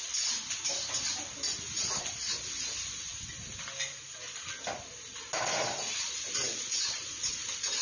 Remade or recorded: recorded